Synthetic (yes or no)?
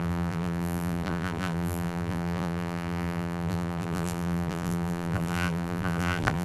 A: yes